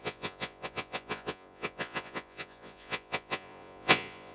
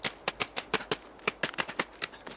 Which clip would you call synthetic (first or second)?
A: first